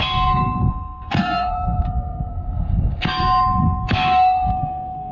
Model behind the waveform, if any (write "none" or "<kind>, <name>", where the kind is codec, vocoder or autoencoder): codec, SNAC